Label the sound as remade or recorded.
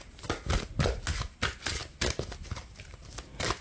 recorded